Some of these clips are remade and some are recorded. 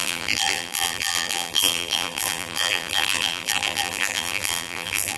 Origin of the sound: remade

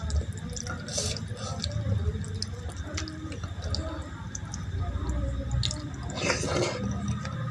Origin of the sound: recorded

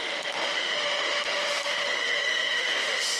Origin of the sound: remade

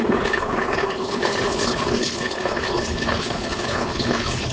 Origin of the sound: remade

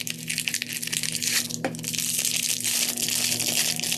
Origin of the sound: recorded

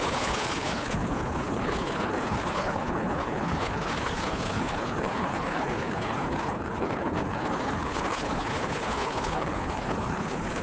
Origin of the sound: remade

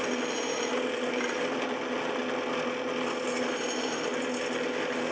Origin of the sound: recorded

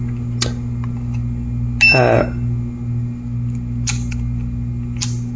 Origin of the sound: recorded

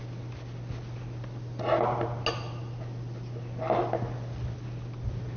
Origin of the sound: recorded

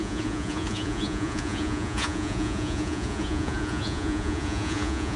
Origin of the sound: remade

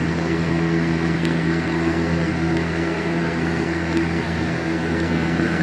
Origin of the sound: remade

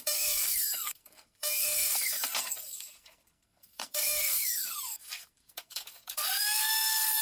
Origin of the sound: remade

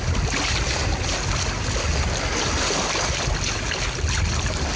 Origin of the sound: recorded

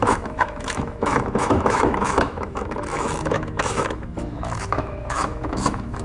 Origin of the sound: remade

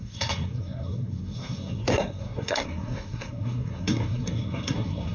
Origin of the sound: remade